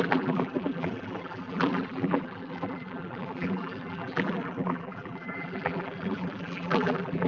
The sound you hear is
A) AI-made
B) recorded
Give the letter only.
A